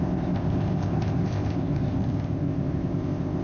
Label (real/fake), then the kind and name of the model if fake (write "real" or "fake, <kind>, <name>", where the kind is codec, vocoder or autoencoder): fake, codec, ZipCodec